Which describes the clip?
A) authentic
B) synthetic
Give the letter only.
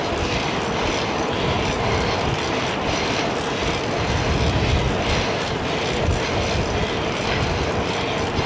A